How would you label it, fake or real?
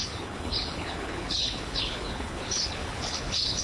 fake